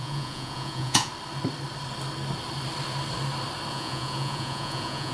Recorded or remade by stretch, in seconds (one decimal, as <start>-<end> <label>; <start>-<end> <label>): 0.0-1.1 remade; 1.1-3.7 recorded; 3.7-5.1 remade